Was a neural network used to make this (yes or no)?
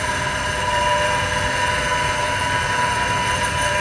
yes